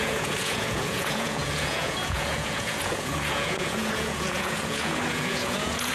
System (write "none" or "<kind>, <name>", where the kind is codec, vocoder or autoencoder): vocoder, Vocos